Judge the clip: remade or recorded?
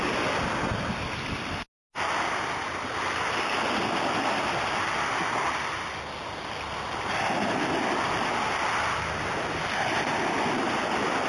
recorded